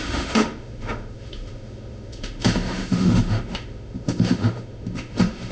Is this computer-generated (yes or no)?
yes